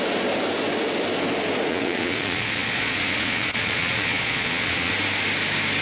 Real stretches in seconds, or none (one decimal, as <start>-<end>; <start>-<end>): 0.0-1.7; 4.9-5.8

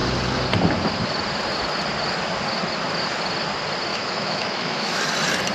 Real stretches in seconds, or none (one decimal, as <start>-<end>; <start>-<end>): 0.0-3.9; 5.0-5.5

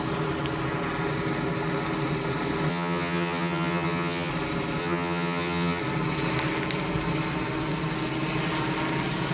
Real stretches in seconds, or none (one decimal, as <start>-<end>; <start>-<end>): 0.0-2.7; 4.3-4.8; 5.8-9.3